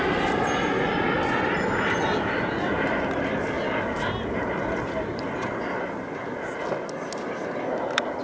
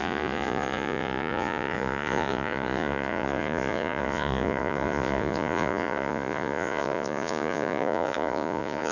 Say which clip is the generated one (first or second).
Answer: second